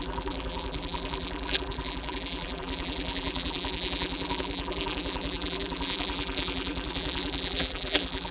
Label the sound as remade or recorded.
remade